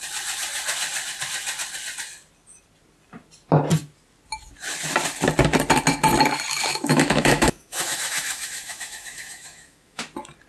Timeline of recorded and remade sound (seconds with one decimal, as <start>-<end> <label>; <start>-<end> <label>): 0.0-6.7 recorded; 6.7-10.0 remade; 10.0-10.5 recorded